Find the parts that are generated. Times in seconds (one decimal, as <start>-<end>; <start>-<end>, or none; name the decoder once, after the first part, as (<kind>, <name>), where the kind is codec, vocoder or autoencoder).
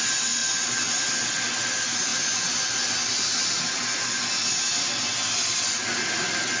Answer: none